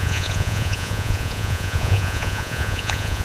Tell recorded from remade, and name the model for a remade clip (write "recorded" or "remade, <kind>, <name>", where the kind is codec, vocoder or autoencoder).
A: remade, vocoder, Vocos